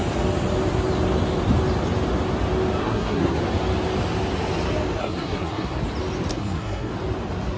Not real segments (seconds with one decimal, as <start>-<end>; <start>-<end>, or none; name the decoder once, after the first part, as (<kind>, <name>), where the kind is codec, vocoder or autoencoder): 2.8-3.4 (codec, SNAC); 5.0-5.8; 6.3-6.9

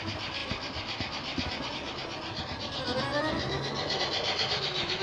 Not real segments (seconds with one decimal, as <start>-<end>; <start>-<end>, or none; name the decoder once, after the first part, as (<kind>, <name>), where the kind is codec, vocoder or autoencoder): none

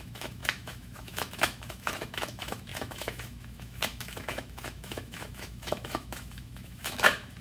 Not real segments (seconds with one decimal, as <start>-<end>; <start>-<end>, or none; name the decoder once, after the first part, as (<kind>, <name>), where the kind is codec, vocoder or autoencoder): 0.0-7.4 (autoencoder, DAC-VAE)